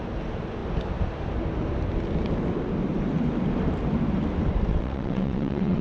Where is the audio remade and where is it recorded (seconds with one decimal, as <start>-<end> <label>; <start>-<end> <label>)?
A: 0.0-4.7 recorded; 4.7-5.8 remade